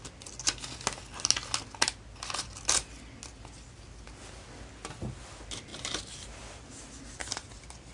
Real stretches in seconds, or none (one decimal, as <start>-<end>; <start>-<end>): 0.0-7.9

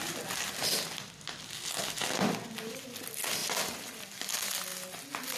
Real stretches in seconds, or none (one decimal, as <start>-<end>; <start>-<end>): 0.0-5.4

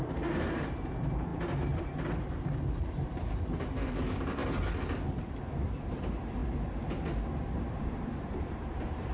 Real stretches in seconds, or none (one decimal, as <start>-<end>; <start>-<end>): 1.3-1.8; 4.4-5.6; 6.4-7.5

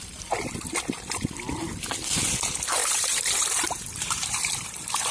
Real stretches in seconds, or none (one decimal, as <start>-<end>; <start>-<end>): 0.0-2.8

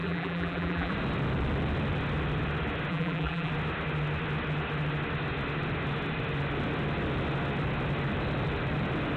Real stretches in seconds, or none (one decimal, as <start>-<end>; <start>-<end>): 0.9-2.9; 3.5-9.2

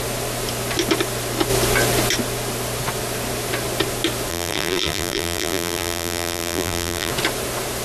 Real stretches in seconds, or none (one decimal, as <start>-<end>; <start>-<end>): 0.0-4.3; 7.1-7.8